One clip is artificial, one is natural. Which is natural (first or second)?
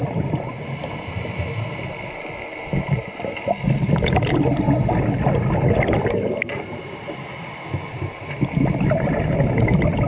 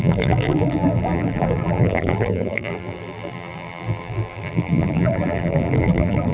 first